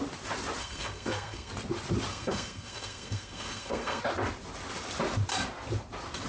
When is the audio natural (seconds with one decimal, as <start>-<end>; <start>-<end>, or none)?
0.0-0.6; 1.5-2.1; 4.0-6.3